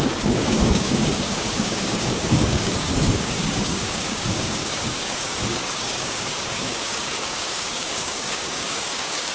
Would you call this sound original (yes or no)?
no